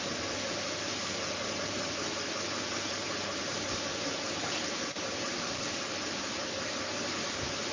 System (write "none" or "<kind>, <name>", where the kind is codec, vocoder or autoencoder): none